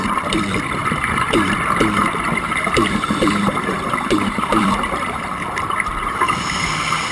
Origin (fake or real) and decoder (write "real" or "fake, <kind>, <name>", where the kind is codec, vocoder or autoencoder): fake, vocoder, BigVGAN v2